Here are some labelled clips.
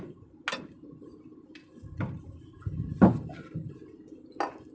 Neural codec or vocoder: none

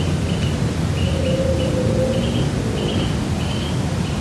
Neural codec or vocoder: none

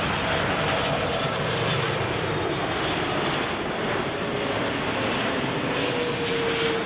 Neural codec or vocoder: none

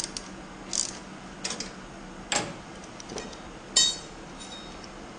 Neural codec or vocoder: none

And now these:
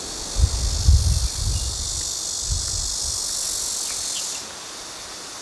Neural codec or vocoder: none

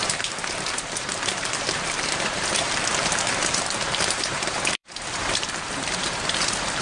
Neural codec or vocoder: vocoder, BigVGAN v2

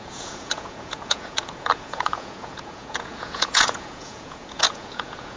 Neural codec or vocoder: vocoder, Vocos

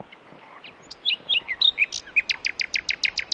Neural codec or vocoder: none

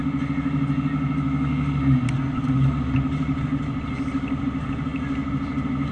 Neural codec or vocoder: none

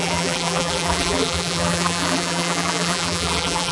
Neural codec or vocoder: vocoder, BigVGAN v2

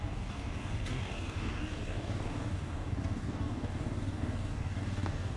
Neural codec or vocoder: codec, DAC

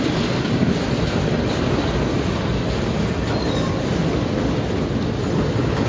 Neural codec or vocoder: none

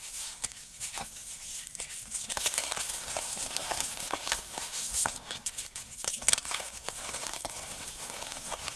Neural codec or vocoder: codec, SNAC